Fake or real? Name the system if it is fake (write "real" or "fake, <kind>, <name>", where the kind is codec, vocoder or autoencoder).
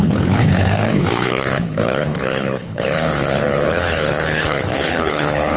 fake, codec, HILCodec